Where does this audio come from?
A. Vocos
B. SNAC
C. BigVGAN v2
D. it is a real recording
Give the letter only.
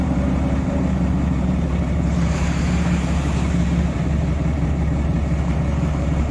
C